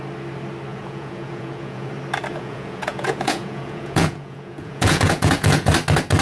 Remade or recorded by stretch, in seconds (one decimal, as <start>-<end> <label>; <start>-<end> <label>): 0.0-0.7 recorded; 0.7-1.9 remade; 1.9-2.3 recorded; 2.3-5.7 remade; 5.7-6.2 recorded

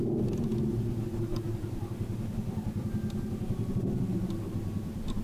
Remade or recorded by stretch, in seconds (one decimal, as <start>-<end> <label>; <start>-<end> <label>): 0.0-5.2 recorded

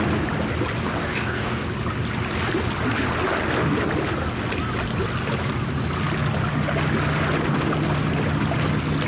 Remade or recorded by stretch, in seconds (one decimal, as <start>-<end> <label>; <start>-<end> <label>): 0.0-1.0 recorded; 1.0-1.6 remade; 1.6-9.1 recorded

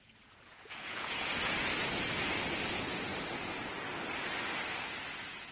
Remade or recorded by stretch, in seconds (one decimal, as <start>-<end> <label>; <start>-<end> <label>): 0.0-1.7 remade; 1.7-2.7 recorded; 2.7-3.1 remade; 3.1-5.1 recorded; 5.1-5.5 remade

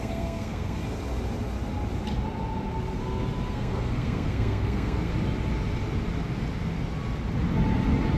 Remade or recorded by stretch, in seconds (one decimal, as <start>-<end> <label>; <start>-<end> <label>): 0.0-0.8 remade; 0.8-3.5 recorded; 3.5-5.1 remade; 5.1-8.2 recorded